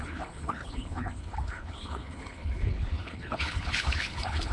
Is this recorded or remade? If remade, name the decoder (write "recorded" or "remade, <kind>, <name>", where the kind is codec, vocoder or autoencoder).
remade, codec, HILCodec